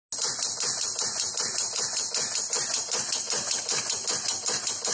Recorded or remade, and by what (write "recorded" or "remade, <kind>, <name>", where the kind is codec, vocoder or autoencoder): recorded